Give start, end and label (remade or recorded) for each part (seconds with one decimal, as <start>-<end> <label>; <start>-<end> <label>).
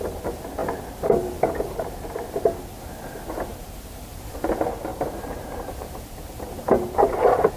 0.0-0.6 recorded; 0.6-1.6 remade; 1.6-3.5 recorded; 3.5-4.5 remade; 4.5-4.9 recorded; 4.9-7.6 remade